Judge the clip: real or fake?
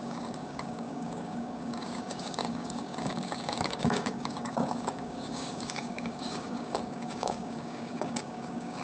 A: fake